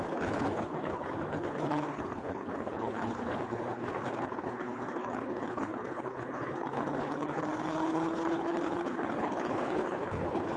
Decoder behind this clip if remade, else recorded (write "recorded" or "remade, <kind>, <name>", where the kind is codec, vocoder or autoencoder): remade, codec, HILCodec